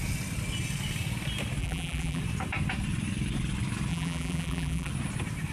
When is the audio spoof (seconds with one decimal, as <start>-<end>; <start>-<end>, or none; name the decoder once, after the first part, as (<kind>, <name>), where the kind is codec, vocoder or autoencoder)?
1.6-2.2 (vocoder, BigVGAN v2); 3.9-4.9